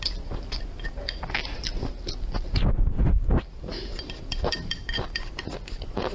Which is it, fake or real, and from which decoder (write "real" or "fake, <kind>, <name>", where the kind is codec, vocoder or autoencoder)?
real